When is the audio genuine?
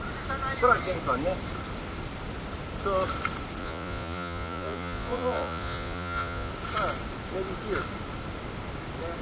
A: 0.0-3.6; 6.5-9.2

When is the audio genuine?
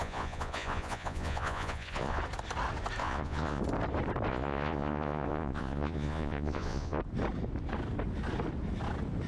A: 2.2-3.0; 3.6-4.3; 7.0-9.3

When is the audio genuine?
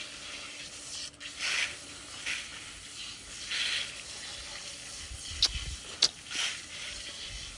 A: 0.0-7.6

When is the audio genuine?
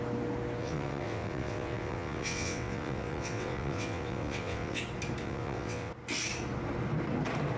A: 0.0-0.6; 4.8-5.2; 5.9-7.6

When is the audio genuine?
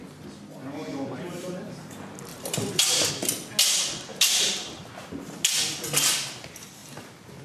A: 0.0-0.9; 1.9-2.3; 3.1-4.1; 5.1-6.8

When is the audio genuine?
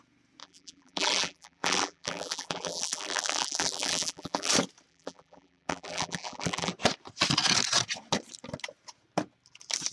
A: 0.0-0.4; 4.5-4.9; 6.7-9.9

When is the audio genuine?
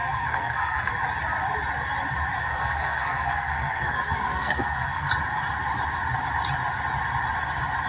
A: 0.9-2.4; 5.1-7.9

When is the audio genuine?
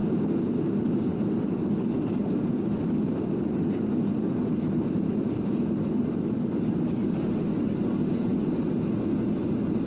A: 0.0-9.9